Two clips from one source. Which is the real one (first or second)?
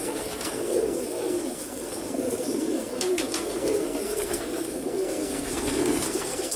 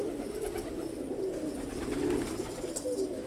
second